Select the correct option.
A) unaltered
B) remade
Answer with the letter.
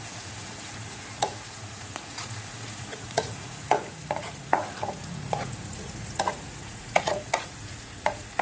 B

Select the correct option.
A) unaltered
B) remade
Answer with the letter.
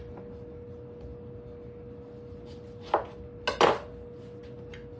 A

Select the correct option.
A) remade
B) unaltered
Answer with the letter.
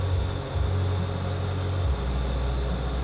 B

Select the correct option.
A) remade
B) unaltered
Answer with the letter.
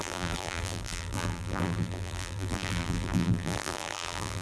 A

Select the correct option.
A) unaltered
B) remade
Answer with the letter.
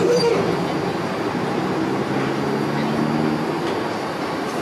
A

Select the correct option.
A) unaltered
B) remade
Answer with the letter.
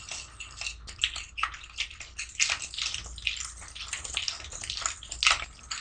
A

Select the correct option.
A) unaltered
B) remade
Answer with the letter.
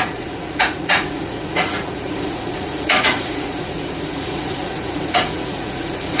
B